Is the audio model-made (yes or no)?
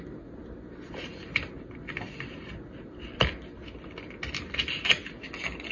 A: no